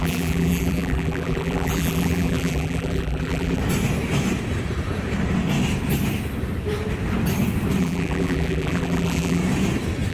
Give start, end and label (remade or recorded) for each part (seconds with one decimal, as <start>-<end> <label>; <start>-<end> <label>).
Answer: 0.0-3.6 remade; 3.6-7.8 recorded; 7.8-9.4 remade; 9.4-10.1 recorded